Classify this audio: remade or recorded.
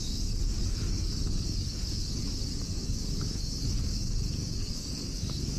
remade